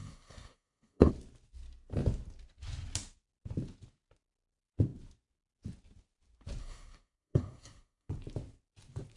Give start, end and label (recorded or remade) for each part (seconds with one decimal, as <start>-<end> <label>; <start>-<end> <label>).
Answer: 0.0-1.1 remade; 1.1-6.6 recorded; 6.6-8.1 remade; 8.1-9.2 recorded